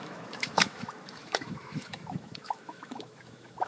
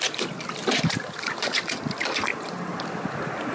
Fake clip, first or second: first